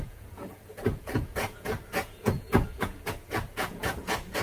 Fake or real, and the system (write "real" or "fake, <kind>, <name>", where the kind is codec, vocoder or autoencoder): fake, vocoder, Vocos